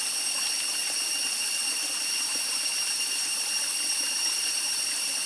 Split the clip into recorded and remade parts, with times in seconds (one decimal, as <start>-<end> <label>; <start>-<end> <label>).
0.0-5.3 recorded